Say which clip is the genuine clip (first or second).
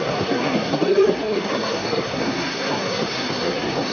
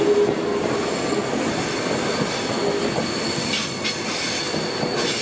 second